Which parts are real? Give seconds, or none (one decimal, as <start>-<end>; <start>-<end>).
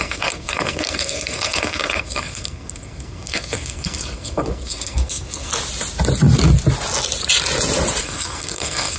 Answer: 5.5-8.0